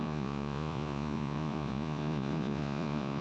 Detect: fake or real fake